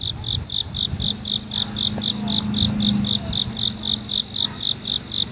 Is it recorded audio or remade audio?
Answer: recorded